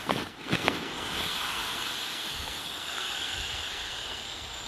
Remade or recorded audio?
remade